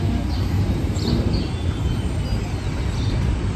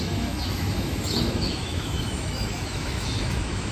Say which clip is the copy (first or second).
second